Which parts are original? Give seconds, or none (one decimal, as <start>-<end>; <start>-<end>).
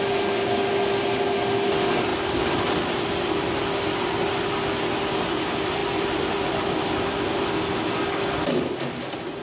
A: 0.0-9.4